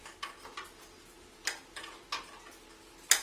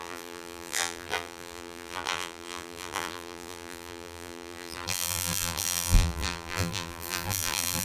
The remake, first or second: second